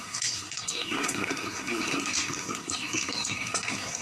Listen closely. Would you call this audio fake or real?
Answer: fake